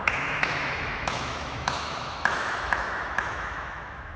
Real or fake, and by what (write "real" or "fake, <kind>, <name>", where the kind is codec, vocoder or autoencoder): fake, autoencoder, DAC-VAE